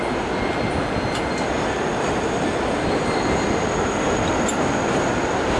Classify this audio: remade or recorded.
recorded